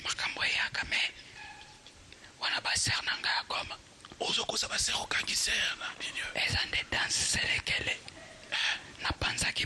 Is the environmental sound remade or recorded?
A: remade